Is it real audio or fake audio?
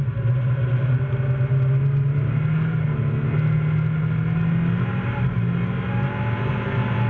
real